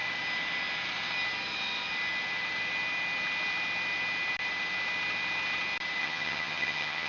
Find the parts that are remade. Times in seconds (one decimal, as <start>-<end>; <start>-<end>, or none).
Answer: 6.0-7.1